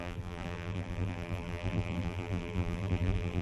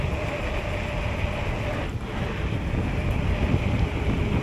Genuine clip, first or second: second